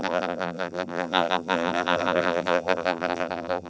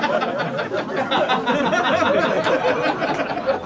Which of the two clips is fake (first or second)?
first